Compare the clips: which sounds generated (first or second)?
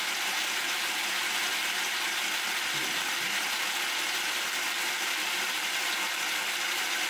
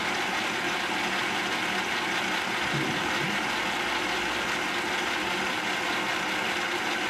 first